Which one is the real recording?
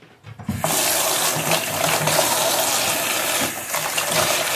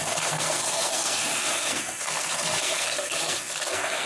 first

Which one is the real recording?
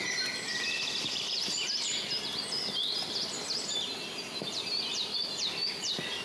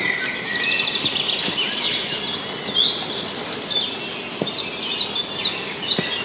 second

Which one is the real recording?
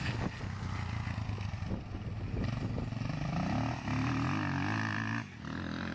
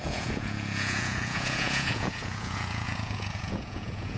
first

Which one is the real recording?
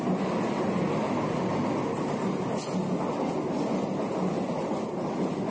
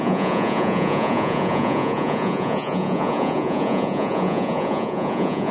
first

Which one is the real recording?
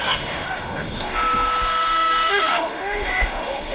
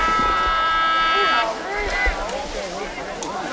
second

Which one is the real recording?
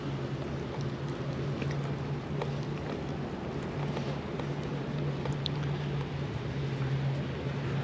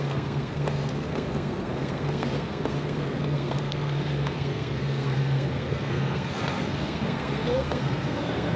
first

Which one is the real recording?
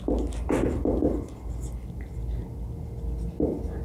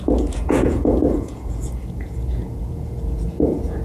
first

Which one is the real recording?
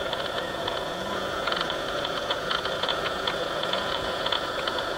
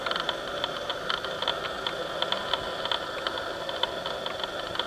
second